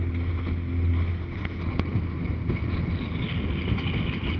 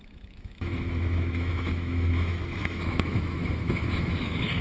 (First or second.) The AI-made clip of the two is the second